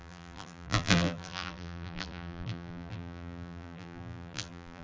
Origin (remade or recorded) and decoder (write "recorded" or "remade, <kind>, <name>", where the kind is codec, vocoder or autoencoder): remade, vocoder, BigVGAN v2